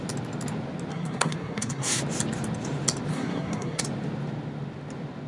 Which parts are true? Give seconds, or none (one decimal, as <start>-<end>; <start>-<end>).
0.0-0.9; 2.0-3.1; 3.8-5.3